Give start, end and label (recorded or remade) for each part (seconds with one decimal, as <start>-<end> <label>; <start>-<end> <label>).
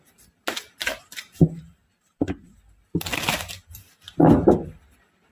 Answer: 0.0-3.1 recorded; 3.1-3.9 remade; 3.9-5.3 recorded